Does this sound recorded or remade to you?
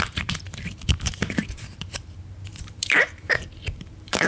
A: remade